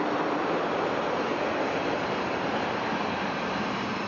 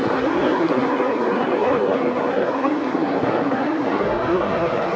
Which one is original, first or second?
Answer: first